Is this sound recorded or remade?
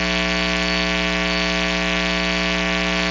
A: recorded